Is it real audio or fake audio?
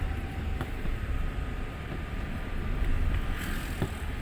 fake